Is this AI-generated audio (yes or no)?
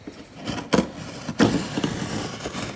no